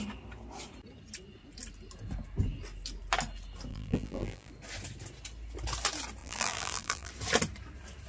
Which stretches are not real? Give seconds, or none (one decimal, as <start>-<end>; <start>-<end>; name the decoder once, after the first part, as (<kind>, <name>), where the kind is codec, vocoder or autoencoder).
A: 3.7-4.5 (vocoder, BigVGAN v2); 6.2-7.1